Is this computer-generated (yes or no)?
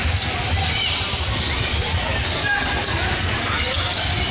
no